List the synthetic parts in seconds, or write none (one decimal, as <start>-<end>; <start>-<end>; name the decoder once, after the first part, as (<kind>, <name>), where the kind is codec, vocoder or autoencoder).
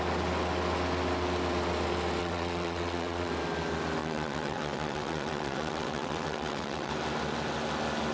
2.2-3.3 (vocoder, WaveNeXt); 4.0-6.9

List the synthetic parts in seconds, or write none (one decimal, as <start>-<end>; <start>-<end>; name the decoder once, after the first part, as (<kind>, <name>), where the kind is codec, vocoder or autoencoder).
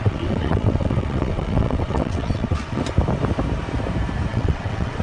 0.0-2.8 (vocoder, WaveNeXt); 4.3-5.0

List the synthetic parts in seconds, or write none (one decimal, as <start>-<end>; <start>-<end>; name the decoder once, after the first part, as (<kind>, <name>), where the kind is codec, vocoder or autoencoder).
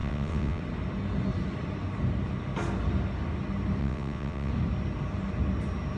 0.0-0.6 (vocoder, WaveNeXt); 3.8-4.5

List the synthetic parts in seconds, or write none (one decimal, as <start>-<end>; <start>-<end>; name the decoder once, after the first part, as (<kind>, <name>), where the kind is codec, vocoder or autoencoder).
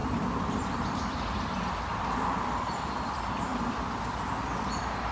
none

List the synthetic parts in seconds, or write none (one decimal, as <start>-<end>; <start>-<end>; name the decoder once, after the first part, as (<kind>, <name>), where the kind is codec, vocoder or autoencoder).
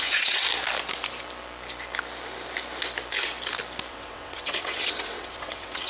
0.0-0.4 (vocoder, WaveNeXt); 3.9-5.9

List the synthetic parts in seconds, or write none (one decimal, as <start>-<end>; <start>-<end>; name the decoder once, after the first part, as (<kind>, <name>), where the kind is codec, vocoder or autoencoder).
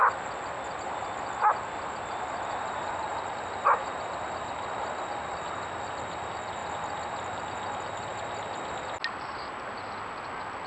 none